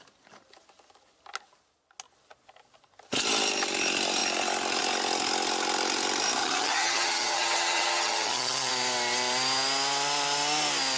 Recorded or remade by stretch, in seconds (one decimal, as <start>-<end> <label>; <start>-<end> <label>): 0.0-6.4 recorded; 6.4-8.7 remade; 8.7-11.0 recorded